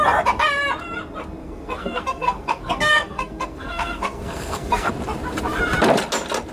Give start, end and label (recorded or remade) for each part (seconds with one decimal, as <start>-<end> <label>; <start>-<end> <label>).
0.0-1.4 recorded; 1.4-4.9 remade; 4.9-6.5 recorded